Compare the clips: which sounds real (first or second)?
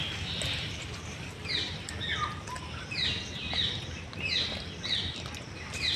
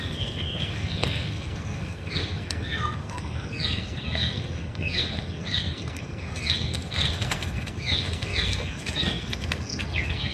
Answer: first